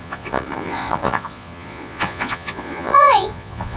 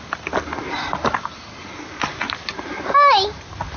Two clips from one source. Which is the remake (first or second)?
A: first